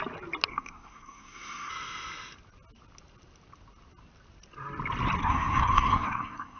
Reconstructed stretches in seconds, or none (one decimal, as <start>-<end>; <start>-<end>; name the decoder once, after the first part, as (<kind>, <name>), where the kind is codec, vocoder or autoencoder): 0.5-1.7 (codec, SNAC); 5.2-6.6